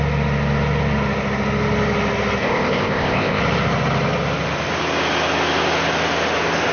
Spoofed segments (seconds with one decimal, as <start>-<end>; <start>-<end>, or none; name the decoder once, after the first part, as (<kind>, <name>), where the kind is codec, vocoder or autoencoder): 2.4-3.4 (codec, ZipCodec)